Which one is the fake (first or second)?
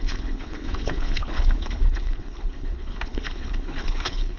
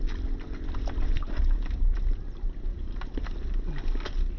first